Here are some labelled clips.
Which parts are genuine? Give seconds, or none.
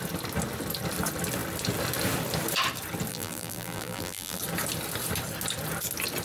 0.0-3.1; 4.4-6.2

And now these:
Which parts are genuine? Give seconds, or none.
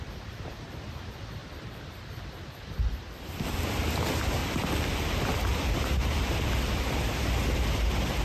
0.0-1.4; 3.6-4.4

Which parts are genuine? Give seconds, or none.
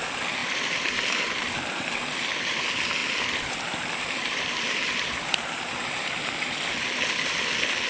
0.0-0.4; 2.3-3.0; 6.7-7.9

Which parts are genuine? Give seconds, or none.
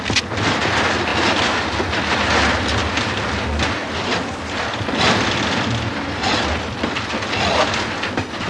0.0-3.8; 7.1-8.5